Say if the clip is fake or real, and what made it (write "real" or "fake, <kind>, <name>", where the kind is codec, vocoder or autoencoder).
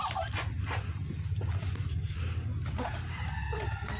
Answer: real